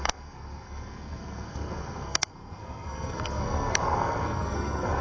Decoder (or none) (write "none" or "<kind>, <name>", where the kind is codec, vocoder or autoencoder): codec, SNAC